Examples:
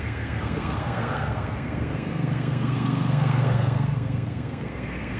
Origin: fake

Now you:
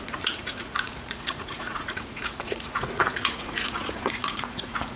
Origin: fake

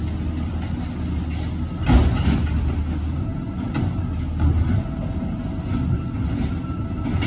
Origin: real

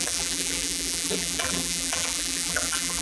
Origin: fake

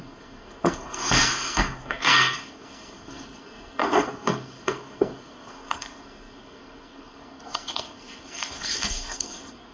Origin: fake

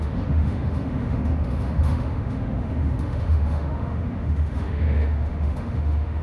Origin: fake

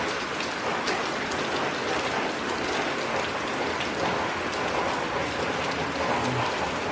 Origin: real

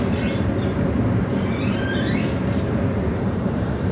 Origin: fake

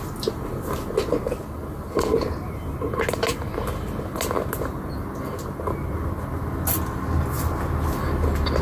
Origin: real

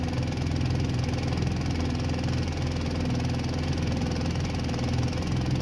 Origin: real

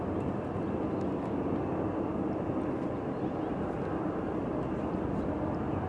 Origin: real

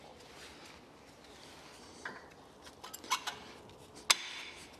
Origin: real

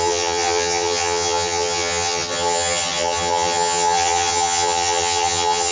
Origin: fake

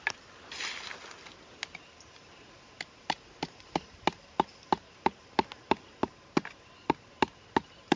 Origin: real